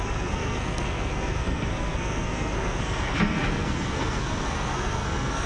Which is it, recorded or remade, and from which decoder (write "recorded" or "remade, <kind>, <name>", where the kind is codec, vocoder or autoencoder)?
remade, codec, SNAC